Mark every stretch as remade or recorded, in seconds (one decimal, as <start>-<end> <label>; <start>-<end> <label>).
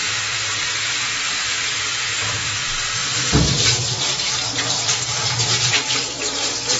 0.0-6.8 recorded